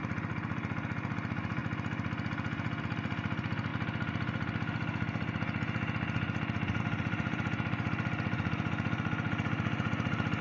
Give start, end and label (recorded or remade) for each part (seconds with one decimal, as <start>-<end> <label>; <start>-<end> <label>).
0.0-1.6 remade; 1.6-2.8 recorded; 2.8-3.7 remade; 3.7-6.8 recorded; 6.8-10.4 remade